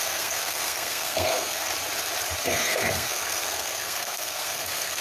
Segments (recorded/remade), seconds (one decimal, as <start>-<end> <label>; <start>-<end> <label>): 0.0-1.7 remade; 1.7-2.4 recorded; 2.4-5.0 remade